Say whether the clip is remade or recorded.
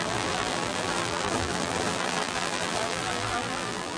remade